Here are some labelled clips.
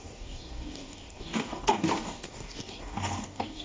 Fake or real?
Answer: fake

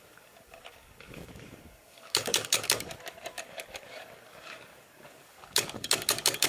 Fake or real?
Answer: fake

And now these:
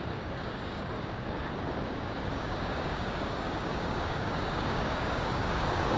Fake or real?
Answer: fake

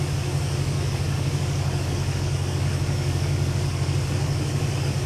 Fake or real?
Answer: fake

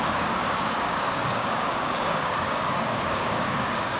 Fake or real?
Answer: fake